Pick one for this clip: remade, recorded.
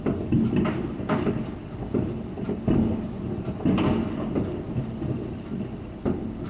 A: recorded